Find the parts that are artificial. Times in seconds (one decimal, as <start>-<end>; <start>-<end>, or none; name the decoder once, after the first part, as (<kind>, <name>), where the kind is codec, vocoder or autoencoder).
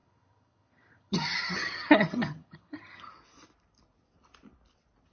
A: 0.0-3.1 (vocoder, HiFi-GAN)